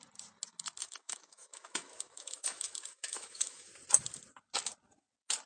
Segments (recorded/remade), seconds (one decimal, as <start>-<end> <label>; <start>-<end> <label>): 0.0-0.8 recorded; 0.8-3.7 remade; 3.7-5.5 recorded